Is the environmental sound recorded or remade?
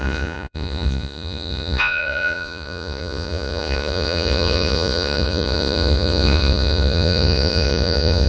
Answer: remade